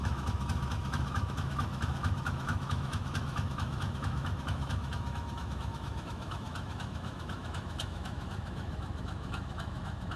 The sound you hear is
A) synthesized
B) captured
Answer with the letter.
A